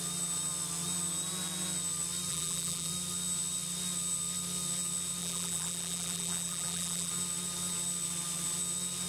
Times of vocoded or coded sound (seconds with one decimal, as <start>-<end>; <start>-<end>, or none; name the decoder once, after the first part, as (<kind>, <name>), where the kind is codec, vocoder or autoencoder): 2.3-2.9 (vocoder, BigVGAN v2); 5.2-7.1